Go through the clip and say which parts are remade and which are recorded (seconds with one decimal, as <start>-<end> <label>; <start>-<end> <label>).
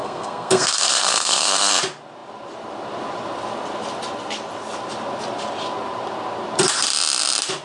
0.0-1.7 remade; 1.7-7.6 recorded